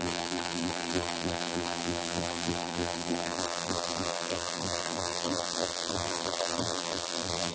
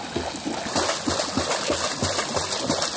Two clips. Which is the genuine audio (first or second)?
second